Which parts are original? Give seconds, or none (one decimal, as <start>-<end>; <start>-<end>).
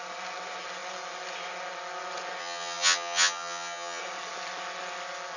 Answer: 0.0-2.4; 4.0-5.4